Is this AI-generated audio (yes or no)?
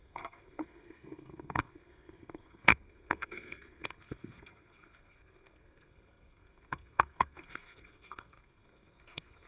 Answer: yes